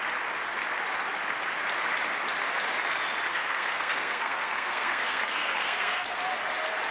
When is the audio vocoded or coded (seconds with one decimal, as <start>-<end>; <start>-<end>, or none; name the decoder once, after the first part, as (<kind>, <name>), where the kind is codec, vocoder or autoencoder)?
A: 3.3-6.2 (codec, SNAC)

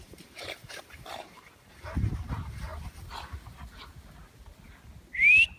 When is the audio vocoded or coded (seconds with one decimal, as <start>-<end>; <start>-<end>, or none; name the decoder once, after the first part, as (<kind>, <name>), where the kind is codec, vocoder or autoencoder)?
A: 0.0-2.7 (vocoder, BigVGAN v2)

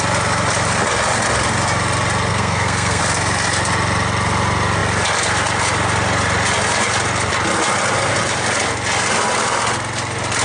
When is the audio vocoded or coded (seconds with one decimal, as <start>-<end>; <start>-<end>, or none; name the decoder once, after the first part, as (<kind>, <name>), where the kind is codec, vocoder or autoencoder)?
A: 2.3-3.0 (codec, SNAC)